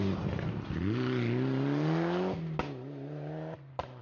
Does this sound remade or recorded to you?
recorded